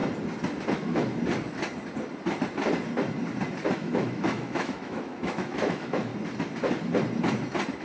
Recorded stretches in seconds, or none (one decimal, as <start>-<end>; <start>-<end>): 0.0-0.7; 1.1-3.7; 6.1-7.8